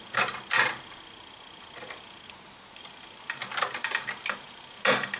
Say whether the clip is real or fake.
real